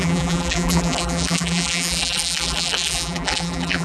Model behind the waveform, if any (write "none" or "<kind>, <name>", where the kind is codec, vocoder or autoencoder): vocoder, BigVGAN v2